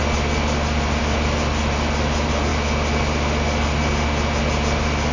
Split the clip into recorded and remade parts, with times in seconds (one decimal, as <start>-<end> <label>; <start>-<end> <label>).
0.0-5.1 recorded

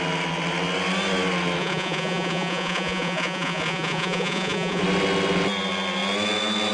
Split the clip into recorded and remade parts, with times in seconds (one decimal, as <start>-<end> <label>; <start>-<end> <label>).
0.0-1.6 recorded; 1.6-4.8 remade; 4.8-6.7 recorded